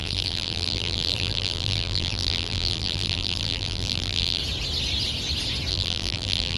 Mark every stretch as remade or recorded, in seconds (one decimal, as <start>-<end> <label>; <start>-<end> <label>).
0.0-4.4 remade; 4.4-5.7 recorded; 5.7-6.6 remade